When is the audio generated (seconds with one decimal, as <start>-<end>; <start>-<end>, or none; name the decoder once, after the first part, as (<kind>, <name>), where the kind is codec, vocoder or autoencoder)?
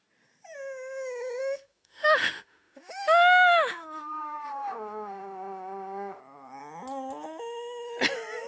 1.4-6.2 (autoencoder, DAC-VAE)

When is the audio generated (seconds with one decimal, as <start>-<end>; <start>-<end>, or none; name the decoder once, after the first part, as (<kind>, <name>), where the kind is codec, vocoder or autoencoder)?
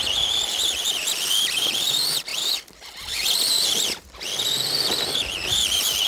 none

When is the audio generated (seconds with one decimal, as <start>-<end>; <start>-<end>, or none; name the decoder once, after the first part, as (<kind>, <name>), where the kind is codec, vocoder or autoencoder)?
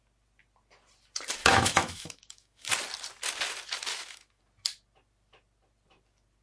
1.4-2.7 (autoencoder, DAC-VAE); 3.9-4.4